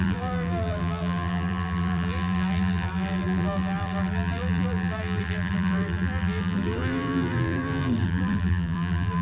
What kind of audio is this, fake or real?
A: fake